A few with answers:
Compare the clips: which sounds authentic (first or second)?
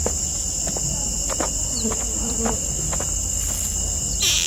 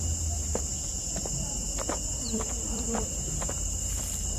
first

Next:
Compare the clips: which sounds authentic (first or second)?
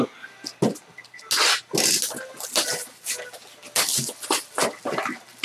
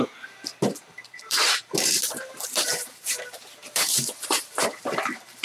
first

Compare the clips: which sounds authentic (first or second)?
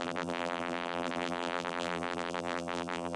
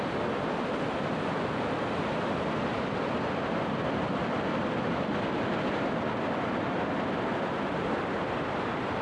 second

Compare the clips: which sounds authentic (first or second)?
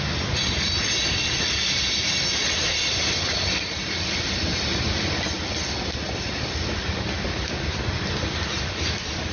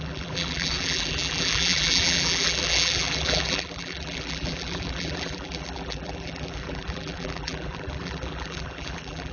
first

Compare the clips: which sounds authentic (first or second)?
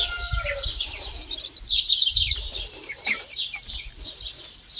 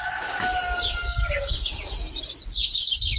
second